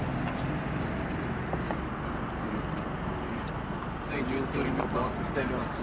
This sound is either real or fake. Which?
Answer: real